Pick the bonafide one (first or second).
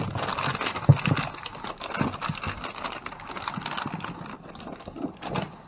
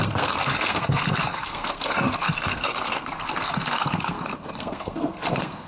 first